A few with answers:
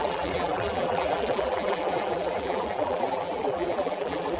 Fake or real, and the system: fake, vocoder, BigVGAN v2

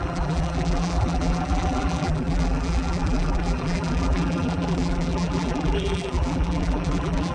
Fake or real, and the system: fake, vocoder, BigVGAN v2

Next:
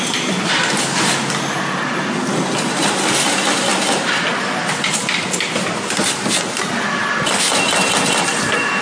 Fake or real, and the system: real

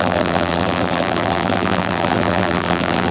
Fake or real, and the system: fake, vocoder, BigVGAN v2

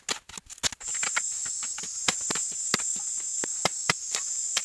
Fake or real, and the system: real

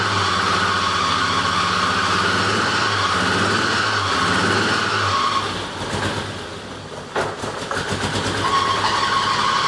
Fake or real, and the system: real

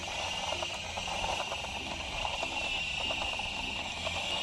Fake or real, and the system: real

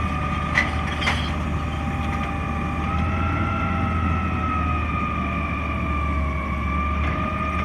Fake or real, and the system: real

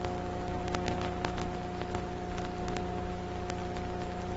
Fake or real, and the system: real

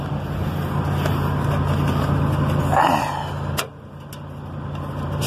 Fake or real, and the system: real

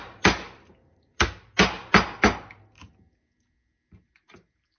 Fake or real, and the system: real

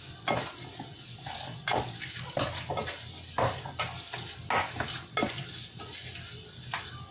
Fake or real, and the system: real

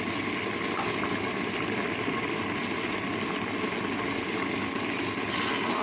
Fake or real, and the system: real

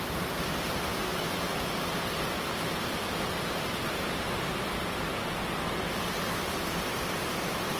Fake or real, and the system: fake, vocoder, BigVGAN v2